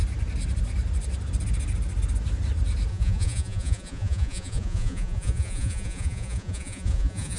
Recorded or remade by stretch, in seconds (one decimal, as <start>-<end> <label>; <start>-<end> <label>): 0.0-2.9 recorded; 2.9-7.4 remade